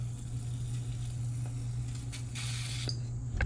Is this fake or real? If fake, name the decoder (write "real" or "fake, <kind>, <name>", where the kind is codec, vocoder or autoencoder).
real